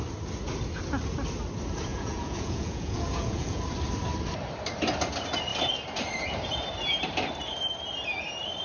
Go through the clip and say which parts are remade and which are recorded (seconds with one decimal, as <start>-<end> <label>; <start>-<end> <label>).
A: 0.0-1.9 recorded; 1.9-3.6 remade; 3.6-8.6 recorded